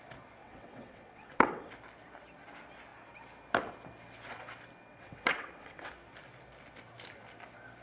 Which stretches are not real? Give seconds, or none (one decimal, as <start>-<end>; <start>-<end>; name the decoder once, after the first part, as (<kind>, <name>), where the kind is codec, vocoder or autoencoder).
0.4-1.7 (vocoder, WaveNeXt); 4.9-5.9